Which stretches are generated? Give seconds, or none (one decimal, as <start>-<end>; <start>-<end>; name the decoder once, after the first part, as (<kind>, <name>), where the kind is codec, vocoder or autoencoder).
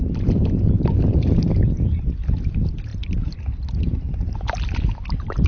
none